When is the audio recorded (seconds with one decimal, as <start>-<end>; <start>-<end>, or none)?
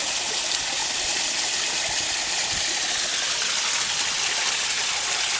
0.0-5.4